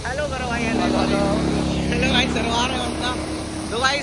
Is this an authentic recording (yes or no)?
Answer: yes